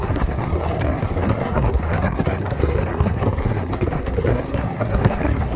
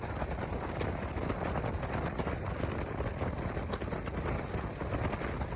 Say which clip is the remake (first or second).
first